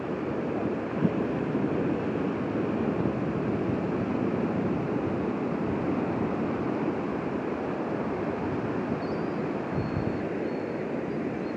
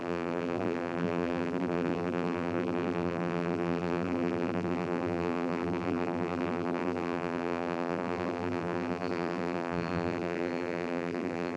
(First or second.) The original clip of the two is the first